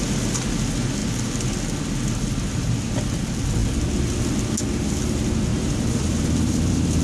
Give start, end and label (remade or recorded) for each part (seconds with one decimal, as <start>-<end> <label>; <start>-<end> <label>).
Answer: 0.0-5.5 recorded; 5.5-7.0 remade